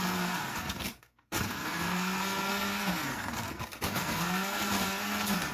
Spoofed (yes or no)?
yes